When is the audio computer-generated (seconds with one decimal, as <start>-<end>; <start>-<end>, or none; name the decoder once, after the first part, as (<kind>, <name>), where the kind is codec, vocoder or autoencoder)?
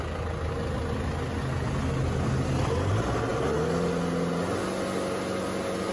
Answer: none